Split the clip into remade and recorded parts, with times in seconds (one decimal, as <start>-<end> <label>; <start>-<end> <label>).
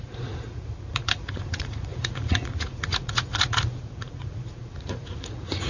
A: 0.0-5.7 remade